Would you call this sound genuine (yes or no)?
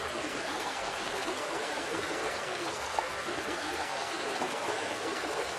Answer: no